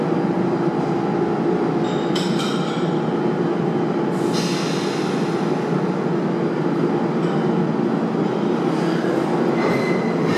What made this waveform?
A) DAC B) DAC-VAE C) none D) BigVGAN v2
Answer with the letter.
C